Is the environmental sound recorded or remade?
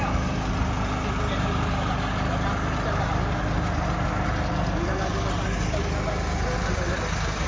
recorded